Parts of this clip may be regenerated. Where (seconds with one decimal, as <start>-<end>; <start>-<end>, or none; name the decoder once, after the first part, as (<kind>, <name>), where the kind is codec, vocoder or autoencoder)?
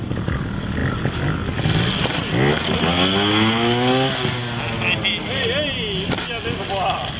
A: none